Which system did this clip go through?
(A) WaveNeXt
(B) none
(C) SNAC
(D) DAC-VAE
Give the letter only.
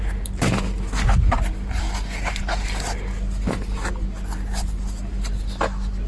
B